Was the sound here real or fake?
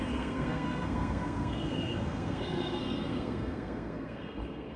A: fake